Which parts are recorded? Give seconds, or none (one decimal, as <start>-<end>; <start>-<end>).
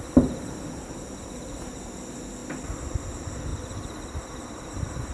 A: 0.0-5.1